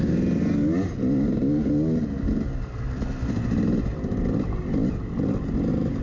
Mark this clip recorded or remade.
recorded